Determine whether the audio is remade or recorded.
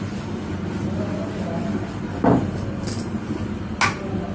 recorded